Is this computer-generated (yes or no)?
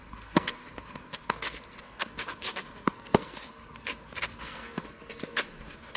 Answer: yes